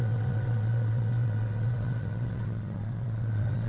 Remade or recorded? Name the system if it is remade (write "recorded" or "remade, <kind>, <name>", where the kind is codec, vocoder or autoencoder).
remade, vocoder, WaveNeXt